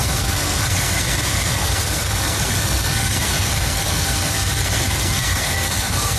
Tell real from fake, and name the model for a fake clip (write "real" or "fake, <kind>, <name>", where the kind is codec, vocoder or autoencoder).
fake, codec, SNAC